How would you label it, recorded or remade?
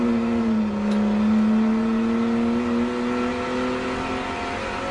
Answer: recorded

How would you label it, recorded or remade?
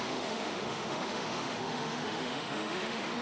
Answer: remade